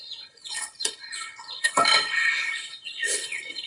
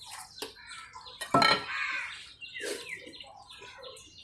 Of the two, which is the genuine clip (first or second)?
second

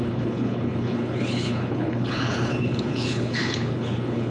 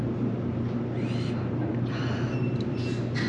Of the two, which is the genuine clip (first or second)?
second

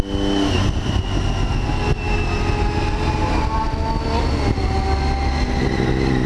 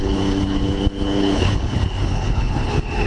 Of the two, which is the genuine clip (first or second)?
first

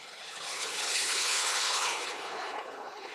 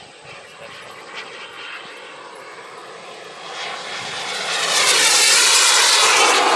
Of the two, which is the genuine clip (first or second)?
second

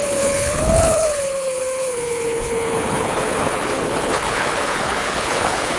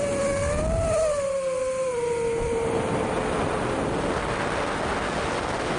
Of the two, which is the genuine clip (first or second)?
second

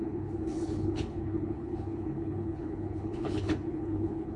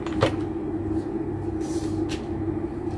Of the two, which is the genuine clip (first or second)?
second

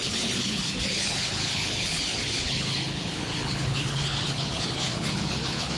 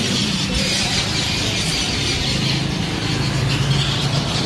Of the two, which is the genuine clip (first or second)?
second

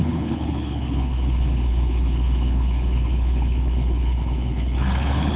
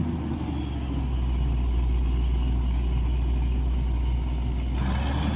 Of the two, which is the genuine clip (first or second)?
second